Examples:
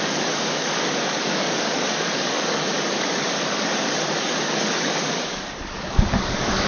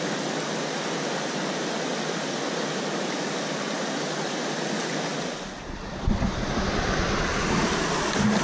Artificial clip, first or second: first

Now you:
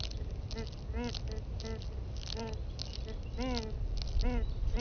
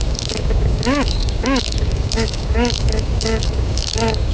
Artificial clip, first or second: second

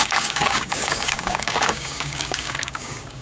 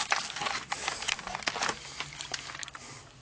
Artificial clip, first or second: first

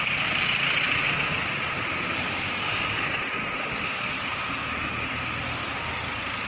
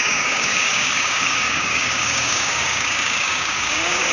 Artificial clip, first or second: second